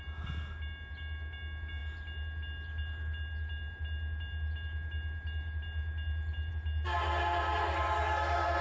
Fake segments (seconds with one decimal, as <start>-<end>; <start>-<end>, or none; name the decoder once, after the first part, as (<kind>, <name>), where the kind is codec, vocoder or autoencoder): none